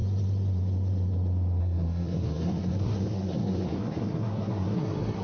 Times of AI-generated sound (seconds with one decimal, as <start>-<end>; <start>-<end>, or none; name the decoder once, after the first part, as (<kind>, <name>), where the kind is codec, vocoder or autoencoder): 1.6-5.2 (codec, SNAC)